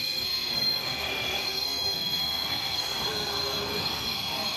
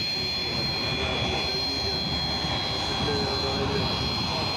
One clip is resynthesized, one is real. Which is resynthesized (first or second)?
first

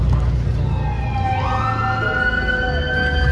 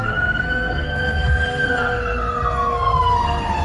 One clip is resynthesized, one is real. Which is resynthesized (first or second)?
second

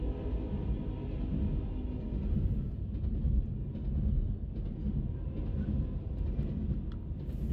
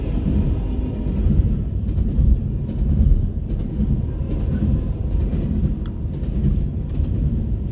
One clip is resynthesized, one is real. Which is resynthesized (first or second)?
second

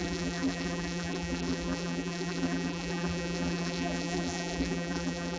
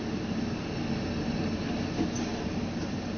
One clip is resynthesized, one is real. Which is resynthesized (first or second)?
first